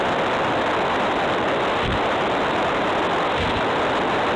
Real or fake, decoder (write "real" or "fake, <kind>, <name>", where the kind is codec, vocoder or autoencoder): real